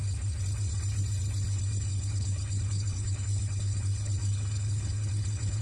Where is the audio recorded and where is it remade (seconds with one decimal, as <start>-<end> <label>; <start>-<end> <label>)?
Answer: 0.0-1.9 recorded; 1.9-5.6 remade